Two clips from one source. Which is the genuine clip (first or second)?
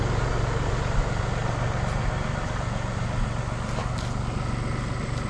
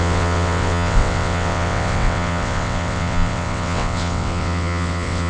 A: first